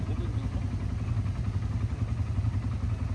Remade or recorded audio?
recorded